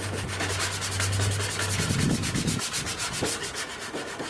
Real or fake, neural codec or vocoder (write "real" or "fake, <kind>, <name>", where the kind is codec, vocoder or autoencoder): real